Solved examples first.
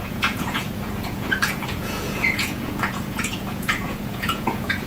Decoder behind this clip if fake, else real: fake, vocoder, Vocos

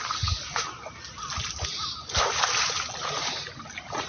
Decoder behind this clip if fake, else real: real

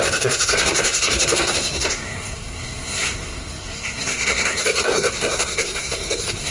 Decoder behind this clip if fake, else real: fake, codec, SNAC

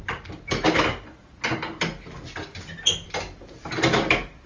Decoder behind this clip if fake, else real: real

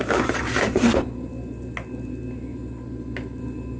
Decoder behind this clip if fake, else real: real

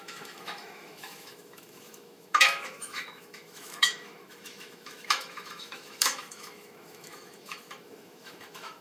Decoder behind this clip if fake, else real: fake, autoencoder, DAC-VAE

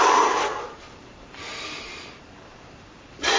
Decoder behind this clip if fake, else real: fake, vocoder, BigVGAN v2